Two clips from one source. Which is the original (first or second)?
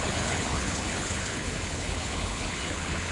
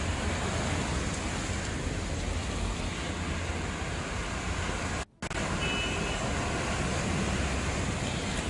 second